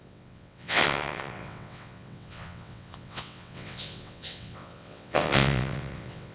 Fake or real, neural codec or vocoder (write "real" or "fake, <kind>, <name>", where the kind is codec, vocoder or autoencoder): fake, vocoder, WaveNeXt